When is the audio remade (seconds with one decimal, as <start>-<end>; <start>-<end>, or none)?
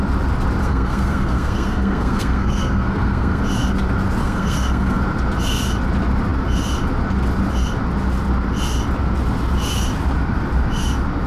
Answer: 0.6-3.4; 4.2-5.0